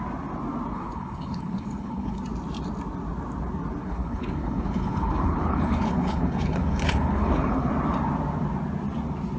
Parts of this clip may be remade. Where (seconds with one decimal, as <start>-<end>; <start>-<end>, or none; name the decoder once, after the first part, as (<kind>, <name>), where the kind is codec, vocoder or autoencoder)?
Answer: 0.7-2.2 (codec, HILCodec); 3.8-7.7